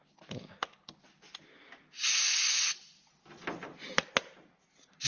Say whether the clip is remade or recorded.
recorded